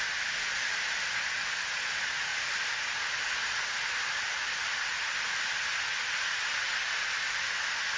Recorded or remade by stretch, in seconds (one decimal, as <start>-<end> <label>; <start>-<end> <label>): 0.0-0.5 recorded; 0.5-1.0 remade; 1.0-8.0 recorded